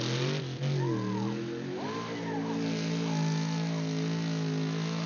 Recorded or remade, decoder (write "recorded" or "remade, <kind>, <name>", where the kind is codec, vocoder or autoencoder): recorded